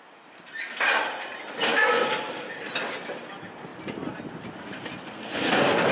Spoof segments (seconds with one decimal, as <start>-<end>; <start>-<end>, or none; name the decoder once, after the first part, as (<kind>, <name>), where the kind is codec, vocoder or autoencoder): none